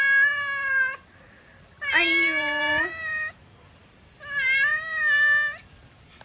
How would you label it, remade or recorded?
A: remade